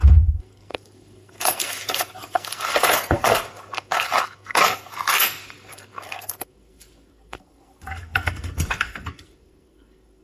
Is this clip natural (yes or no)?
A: no